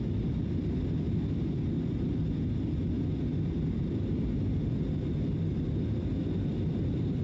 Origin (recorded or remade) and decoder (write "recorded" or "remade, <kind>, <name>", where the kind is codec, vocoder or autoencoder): recorded